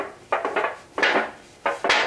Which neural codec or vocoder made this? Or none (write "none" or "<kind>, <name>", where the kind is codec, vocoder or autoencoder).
none